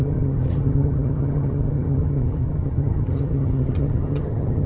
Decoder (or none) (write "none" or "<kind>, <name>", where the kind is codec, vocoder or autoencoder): vocoder, HiFi-GAN